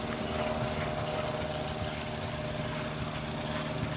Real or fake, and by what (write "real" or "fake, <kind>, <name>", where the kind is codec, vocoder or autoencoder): real